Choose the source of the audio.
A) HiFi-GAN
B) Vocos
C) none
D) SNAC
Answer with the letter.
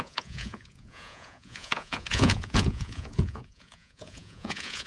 B